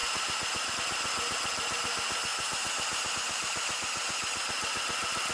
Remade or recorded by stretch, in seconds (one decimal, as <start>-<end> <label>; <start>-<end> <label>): 0.0-5.3 recorded